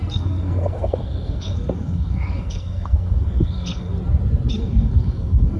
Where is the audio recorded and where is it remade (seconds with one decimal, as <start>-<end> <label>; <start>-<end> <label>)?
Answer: 0.0-3.9 remade; 3.9-4.5 recorded; 4.5-5.6 remade